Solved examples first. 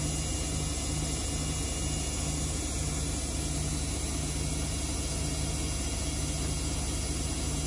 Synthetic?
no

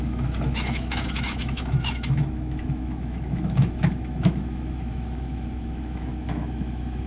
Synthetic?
yes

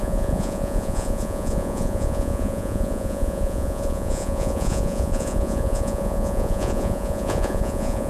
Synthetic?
yes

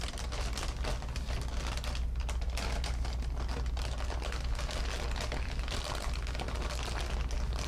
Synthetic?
no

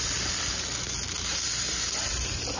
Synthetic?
no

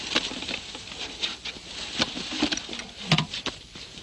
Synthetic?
no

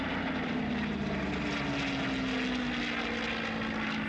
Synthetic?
no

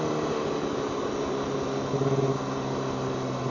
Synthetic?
no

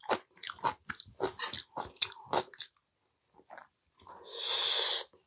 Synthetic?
no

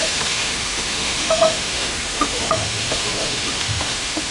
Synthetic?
yes